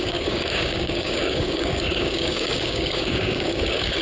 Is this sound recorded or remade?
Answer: remade